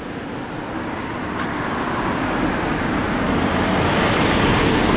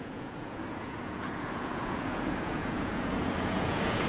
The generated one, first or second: second